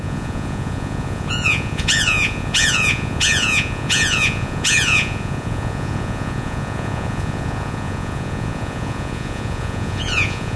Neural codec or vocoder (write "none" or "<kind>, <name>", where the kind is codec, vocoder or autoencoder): vocoder, Vocos